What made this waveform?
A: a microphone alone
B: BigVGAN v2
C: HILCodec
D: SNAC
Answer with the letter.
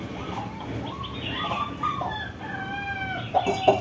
A